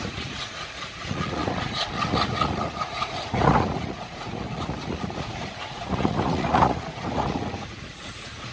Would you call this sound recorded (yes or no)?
no